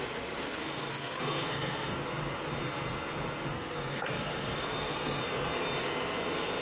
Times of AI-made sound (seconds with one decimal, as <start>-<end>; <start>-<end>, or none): 0.9-1.9; 3.5-5.2